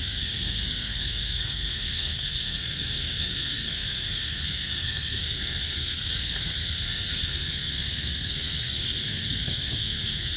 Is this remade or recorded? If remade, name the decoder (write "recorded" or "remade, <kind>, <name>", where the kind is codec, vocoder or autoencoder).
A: remade, codec, SNAC